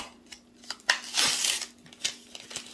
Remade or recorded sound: recorded